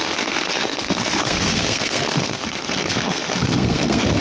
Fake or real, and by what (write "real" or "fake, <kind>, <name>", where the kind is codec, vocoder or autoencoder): fake, codec, SNAC